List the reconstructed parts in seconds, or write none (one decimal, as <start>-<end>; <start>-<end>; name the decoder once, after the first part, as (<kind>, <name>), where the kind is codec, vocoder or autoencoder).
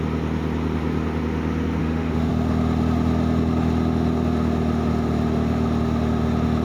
1.8-2.3 (autoencoder, DAC-VAE)